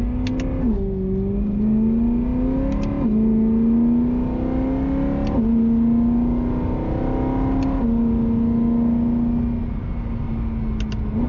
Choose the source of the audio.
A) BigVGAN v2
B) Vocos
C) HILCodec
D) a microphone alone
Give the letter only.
D